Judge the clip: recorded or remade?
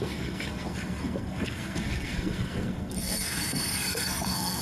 remade